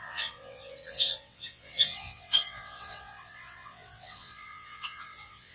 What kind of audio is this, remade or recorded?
remade